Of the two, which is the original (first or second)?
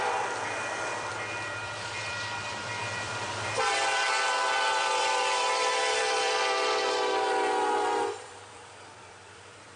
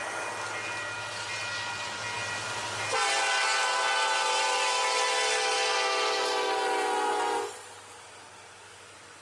second